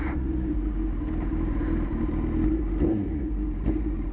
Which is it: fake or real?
real